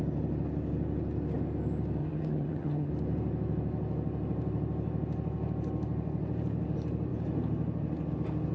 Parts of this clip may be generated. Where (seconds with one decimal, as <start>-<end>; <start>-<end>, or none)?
2.0-2.9